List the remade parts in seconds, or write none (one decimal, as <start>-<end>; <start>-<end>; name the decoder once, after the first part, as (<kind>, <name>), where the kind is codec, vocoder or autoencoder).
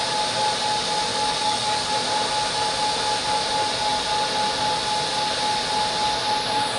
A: 1.1-1.9 (codec, DAC)